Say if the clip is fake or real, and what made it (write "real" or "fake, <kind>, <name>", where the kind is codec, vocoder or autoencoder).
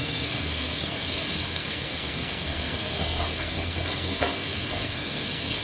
fake, codec, SNAC